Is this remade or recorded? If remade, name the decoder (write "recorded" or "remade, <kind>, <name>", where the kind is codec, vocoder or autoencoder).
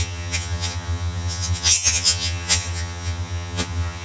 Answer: remade, vocoder, HiFi-GAN